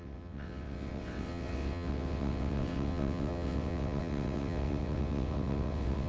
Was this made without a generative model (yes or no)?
no